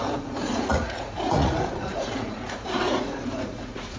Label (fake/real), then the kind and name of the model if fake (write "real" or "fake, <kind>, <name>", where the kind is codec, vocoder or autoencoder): fake, vocoder, Vocos